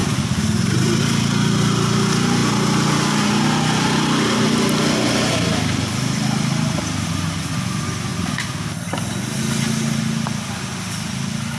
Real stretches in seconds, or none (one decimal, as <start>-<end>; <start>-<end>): 1.0-11.6